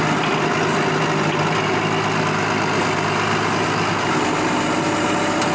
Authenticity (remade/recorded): recorded